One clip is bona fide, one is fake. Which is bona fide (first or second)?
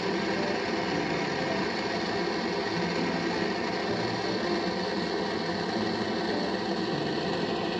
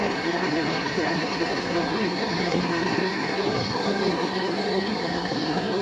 first